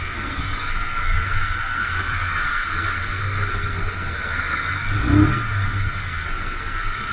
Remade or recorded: remade